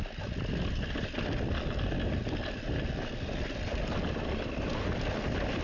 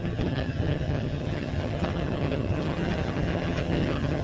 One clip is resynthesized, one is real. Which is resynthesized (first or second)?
second